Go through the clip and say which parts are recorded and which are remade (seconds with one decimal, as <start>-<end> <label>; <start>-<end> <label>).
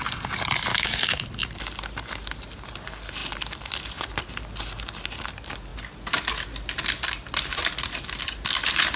0.0-0.7 recorded; 0.7-1.2 remade; 1.2-9.0 recorded